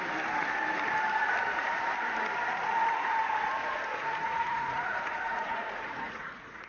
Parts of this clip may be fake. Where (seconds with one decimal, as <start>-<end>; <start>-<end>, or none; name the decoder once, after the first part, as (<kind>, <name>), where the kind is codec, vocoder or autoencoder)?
2.5-6.7 (vocoder, Vocos)